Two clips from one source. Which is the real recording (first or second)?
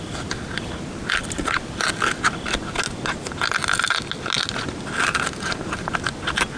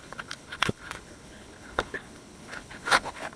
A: first